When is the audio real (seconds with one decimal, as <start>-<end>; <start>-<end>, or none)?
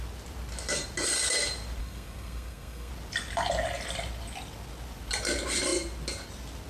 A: 0.0-1.8; 2.9-6.7